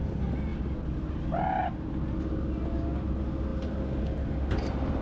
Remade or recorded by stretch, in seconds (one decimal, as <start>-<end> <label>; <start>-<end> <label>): 0.0-5.0 recorded